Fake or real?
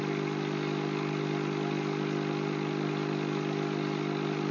real